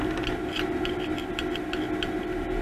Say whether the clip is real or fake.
real